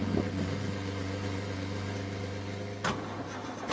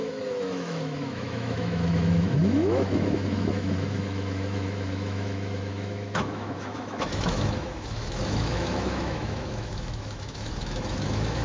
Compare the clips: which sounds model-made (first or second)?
second